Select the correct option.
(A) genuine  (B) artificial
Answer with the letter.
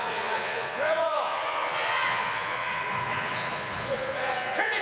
B